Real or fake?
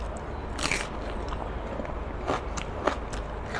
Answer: real